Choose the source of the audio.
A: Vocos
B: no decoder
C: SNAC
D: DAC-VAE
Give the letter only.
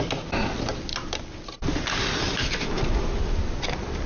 B